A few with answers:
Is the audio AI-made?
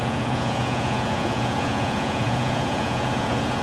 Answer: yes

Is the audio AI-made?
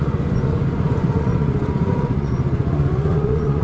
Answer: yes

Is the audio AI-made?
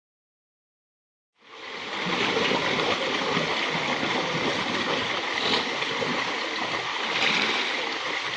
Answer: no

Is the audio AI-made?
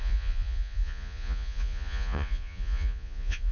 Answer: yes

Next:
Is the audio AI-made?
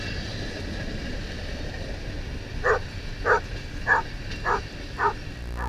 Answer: no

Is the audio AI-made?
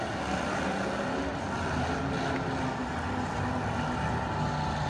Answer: no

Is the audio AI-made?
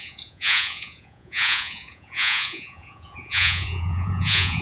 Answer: yes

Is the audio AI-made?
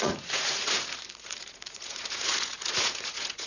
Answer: yes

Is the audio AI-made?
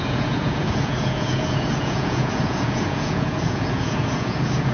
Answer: yes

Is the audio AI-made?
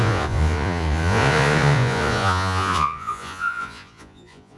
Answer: yes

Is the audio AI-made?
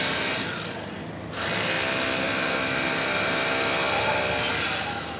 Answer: no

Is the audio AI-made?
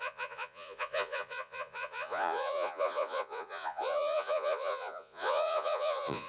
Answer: yes